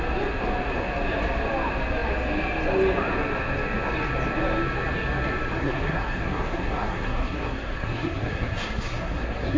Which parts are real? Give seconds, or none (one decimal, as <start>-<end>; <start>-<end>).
0.0-5.6